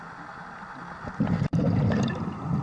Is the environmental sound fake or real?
real